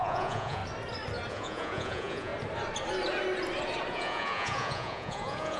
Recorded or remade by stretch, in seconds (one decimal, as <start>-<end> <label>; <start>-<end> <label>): 0.0-0.6 remade; 0.6-1.3 recorded; 1.3-2.3 remade; 2.3-3.9 recorded; 3.9-5.6 remade